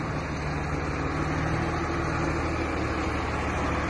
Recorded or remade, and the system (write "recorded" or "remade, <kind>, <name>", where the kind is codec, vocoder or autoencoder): recorded